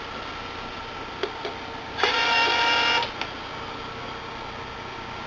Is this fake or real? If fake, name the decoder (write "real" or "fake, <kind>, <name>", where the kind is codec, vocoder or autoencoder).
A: real